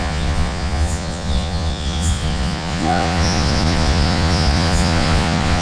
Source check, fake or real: fake